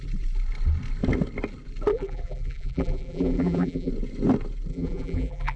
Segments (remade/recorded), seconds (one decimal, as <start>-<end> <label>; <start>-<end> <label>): 0.0-1.9 recorded; 1.9-3.9 remade; 3.9-4.7 recorded; 4.7-5.6 remade